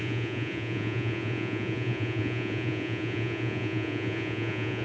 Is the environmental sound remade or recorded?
remade